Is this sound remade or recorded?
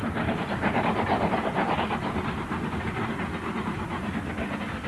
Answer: recorded